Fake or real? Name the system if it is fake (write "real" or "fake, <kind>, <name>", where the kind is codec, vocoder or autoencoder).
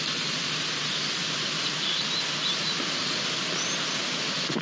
real